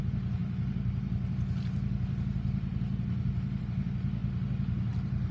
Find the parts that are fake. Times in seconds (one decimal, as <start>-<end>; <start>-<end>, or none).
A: none